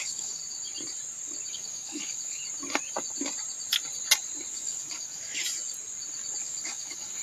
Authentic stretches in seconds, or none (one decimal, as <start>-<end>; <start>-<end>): 0.4-1.5; 2.4-4.5; 5.4-6.4